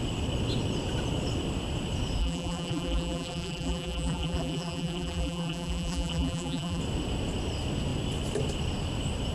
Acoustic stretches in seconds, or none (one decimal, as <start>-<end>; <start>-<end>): 0.0-2.2; 6.8-9.3